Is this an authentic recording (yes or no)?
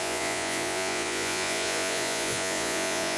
no